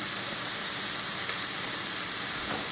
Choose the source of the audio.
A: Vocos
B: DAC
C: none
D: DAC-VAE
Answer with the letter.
C